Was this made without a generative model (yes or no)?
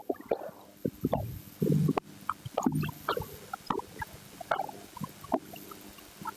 yes